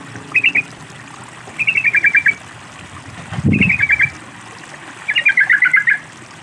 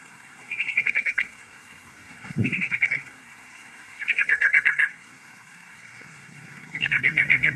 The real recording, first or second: first